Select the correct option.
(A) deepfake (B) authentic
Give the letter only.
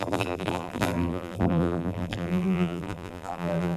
A